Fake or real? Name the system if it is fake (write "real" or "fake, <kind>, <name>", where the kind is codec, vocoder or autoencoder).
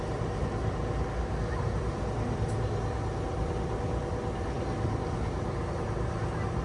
real